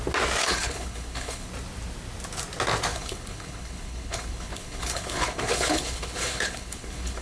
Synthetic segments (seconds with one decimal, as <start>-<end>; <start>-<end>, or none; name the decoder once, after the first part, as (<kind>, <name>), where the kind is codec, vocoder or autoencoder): 0.4-1.5 (codec, HILCodec); 2.9-7.2